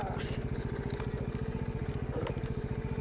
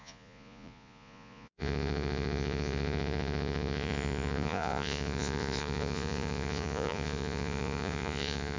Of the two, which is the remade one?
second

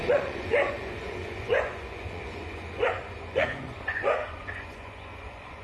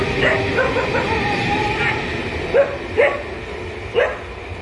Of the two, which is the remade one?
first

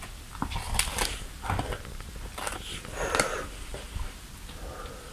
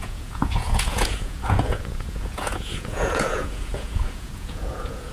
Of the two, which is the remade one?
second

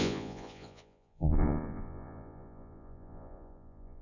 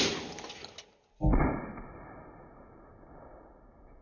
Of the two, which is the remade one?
first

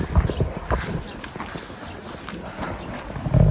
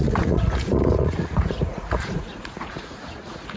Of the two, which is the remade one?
second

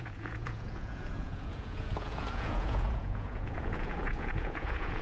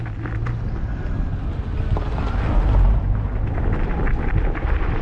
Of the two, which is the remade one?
first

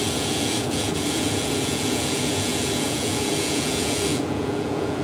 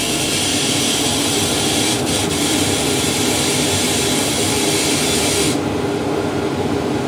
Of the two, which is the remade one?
first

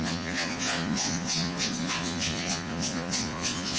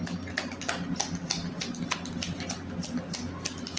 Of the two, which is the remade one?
first